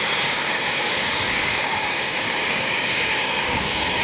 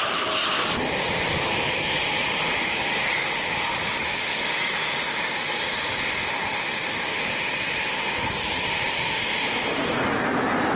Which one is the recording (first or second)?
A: second